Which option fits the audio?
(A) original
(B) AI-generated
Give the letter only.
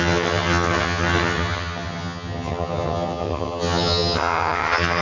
B